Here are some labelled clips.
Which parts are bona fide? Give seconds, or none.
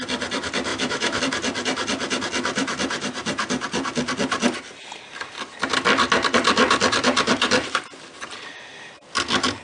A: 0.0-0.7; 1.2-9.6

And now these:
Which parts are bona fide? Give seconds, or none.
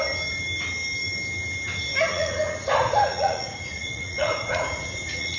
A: 0.0-2.1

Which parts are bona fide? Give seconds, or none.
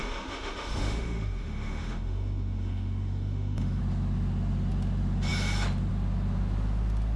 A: 3.8-7.2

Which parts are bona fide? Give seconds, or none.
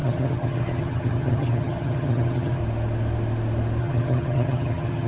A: 2.6-3.8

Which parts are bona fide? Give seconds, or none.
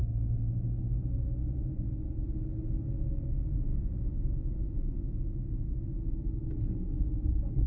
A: 1.7-3.7; 5.7-7.7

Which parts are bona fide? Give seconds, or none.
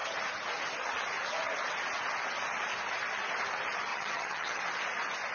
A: 0.0-3.9; 4.6-5.3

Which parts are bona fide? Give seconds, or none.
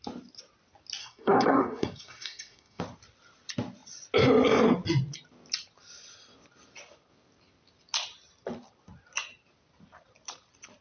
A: 0.0-1.0; 2.8-10.8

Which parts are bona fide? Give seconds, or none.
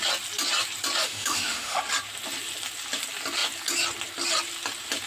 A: 0.0-1.0; 1.8-5.1